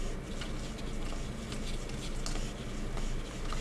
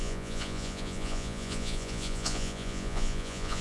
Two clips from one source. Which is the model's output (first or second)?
second